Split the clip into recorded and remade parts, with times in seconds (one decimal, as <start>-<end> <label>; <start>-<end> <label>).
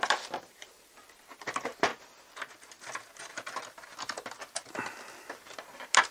0.0-1.9 remade; 1.9-3.3 recorded; 3.3-3.9 remade; 3.9-5.3 recorded; 5.3-6.1 remade